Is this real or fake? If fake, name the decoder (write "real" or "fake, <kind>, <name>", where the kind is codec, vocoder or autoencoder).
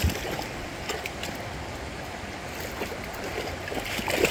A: real